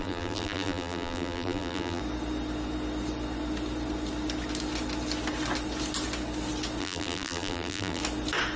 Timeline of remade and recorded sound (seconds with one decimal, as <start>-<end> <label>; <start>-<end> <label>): 0.0-2.0 remade; 2.0-6.8 recorded; 6.8-8.0 remade; 8.0-8.6 recorded